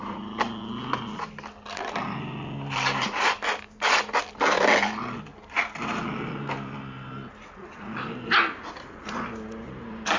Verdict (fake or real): real